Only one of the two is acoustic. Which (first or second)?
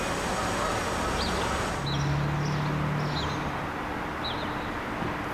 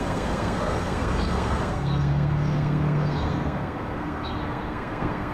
first